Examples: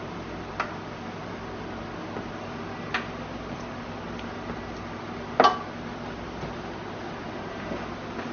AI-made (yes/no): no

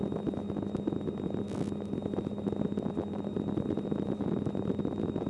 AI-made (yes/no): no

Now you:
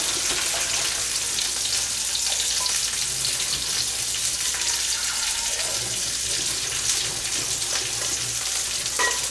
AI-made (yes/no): no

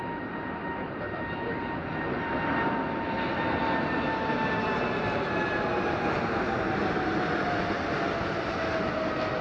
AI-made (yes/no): no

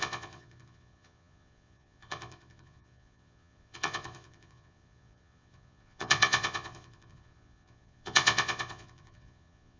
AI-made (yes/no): yes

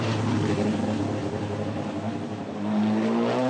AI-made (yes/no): no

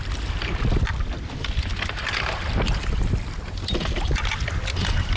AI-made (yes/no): no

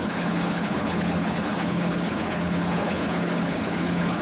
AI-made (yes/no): yes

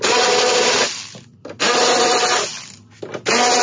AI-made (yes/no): no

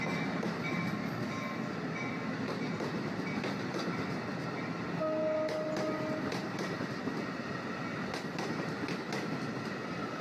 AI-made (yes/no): no